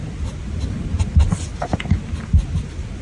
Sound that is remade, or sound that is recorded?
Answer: recorded